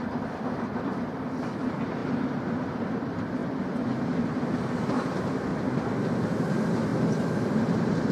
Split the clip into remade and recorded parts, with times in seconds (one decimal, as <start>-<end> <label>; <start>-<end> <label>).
0.0-2.0 remade; 2.0-2.9 recorded; 2.9-3.4 remade; 3.4-4.3 recorded; 4.3-5.5 remade; 5.5-6.2 recorded; 6.2-6.9 remade; 6.9-8.1 recorded